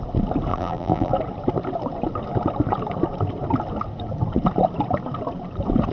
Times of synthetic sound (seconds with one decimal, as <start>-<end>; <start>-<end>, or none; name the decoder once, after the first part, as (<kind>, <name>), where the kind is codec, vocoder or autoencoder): 0.5-1.1 (vocoder, BigVGAN v2)